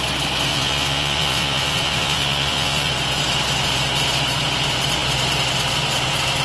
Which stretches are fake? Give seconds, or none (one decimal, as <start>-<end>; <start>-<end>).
0.5-2.9